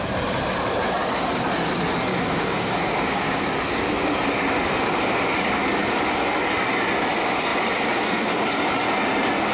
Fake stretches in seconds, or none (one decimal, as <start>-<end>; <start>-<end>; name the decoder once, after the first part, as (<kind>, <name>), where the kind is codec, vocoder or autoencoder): 2.1-3.4 (codec, DAC)